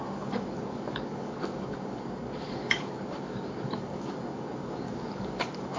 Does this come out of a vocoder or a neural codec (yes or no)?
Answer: yes